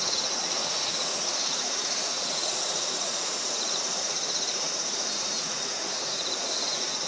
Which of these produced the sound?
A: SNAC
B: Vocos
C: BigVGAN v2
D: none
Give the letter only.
B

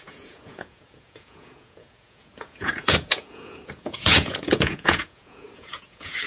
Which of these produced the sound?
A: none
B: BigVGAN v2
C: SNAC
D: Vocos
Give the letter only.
D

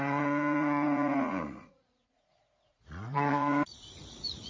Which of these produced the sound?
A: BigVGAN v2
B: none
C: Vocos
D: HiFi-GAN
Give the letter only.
C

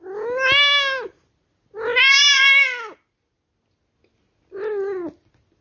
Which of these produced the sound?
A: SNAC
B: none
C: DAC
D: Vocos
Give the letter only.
B